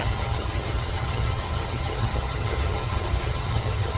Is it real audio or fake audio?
fake